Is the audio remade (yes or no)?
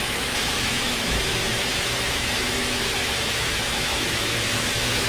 yes